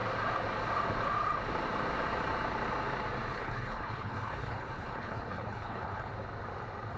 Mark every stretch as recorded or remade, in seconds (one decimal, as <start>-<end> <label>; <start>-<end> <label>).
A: 0.0-3.3 recorded; 3.3-6.1 remade; 6.1-7.0 recorded